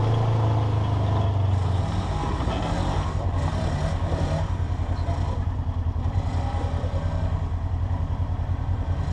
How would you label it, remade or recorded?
recorded